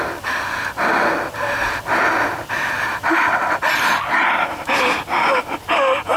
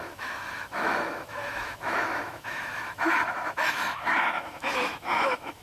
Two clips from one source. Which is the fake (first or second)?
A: second